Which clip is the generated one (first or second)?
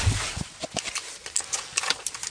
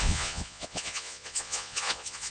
second